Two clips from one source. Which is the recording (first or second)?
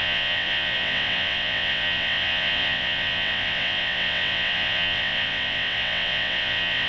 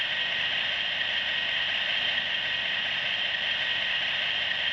second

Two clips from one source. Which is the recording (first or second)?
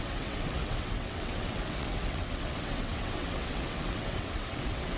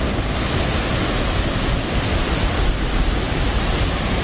second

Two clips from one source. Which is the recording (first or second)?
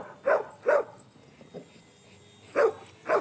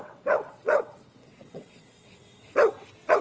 first